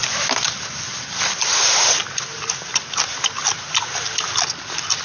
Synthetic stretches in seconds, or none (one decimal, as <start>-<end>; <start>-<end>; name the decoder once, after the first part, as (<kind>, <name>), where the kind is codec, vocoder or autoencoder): none